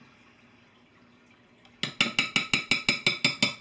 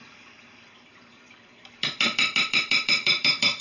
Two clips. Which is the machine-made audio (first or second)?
second